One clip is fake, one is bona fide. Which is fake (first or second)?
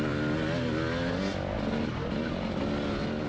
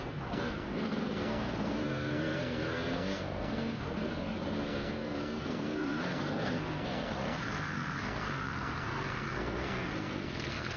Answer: second